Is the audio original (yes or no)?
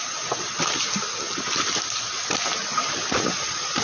yes